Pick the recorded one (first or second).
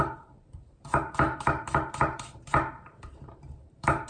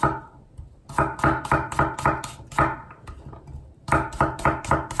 second